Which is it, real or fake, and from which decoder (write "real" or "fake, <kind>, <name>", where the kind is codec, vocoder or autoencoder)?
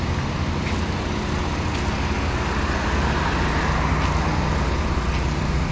real